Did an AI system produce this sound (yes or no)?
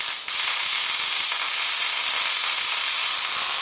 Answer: no